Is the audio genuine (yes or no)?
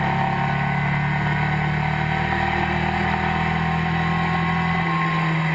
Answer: yes